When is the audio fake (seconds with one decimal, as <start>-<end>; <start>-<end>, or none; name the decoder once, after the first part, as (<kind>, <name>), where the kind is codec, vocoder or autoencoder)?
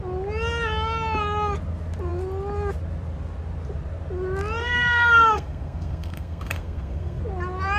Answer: 4.6-7.2 (codec, SNAC)